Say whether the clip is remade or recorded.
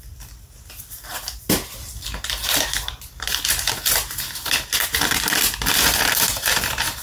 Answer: recorded